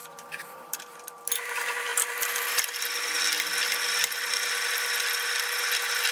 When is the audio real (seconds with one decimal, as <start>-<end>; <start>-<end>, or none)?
1.2-6.1